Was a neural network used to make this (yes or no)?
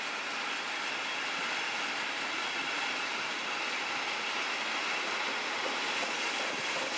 no